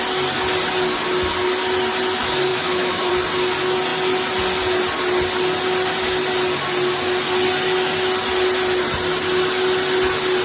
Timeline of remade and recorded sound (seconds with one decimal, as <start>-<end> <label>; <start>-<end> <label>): 0.0-2.5 recorded; 2.5-3.1 remade; 3.1-10.4 recorded